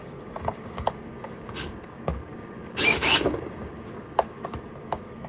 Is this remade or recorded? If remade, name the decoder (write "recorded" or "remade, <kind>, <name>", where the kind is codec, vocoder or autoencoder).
remade, codec, DAC